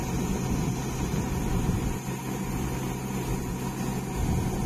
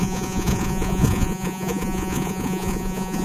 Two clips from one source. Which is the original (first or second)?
first